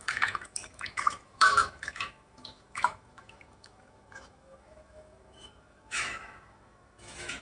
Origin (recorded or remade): remade